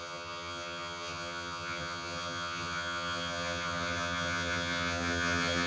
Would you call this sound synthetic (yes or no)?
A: yes